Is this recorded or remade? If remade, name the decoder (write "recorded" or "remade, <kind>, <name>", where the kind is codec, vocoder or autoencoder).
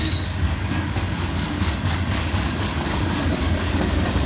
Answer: remade, codec, DAC